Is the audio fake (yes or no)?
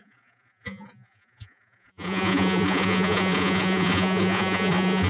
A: yes